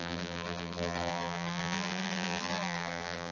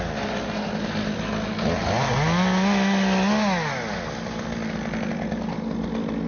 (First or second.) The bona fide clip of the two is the second